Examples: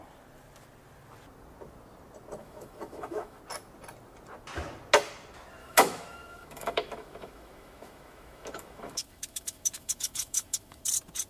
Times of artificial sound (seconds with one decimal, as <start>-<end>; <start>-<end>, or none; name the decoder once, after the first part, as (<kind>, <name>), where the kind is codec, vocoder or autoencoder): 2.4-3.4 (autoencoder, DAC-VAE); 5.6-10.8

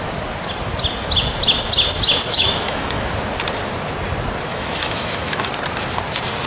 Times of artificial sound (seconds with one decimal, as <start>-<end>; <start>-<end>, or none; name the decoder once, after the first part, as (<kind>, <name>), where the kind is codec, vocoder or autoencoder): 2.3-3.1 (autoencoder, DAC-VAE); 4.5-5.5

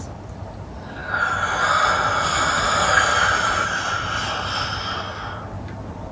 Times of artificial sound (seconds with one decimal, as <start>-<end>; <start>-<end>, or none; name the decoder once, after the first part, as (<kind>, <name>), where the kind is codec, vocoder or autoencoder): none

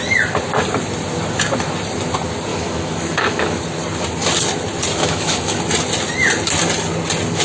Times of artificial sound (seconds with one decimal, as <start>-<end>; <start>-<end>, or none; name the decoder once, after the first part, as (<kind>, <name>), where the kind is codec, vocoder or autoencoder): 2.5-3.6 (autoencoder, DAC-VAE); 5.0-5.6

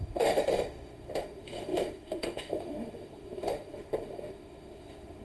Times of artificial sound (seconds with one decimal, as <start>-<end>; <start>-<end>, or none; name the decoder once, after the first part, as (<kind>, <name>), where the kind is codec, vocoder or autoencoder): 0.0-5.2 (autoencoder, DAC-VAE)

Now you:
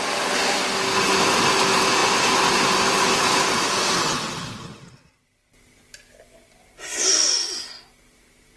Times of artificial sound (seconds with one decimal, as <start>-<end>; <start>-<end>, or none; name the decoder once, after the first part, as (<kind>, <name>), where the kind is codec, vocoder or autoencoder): none

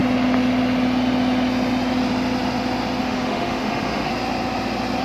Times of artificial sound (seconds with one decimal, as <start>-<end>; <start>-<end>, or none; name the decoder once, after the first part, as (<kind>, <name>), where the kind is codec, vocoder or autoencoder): 3.0-4.1 (autoencoder, DAC-VAE)